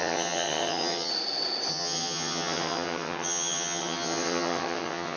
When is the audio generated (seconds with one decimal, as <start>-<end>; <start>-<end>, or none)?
0.0-1.1; 1.7-5.2